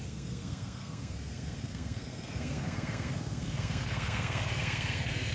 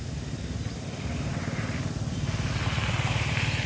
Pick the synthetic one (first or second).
first